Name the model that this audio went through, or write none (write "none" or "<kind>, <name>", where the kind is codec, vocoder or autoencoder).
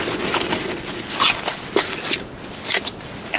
none